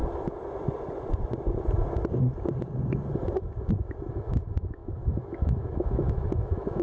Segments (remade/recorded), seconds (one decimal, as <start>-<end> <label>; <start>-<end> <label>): 0.0-4.1 recorded; 4.1-6.8 remade